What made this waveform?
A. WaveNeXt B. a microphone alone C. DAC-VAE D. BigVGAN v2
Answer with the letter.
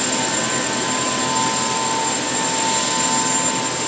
B